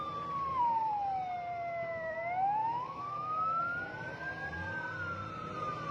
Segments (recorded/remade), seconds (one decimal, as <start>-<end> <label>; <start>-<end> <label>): 0.0-2.6 recorded; 2.6-3.6 remade; 3.6-5.9 recorded